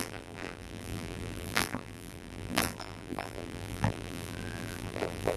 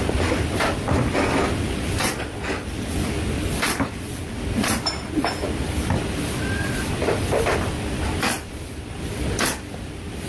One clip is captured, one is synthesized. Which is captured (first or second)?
second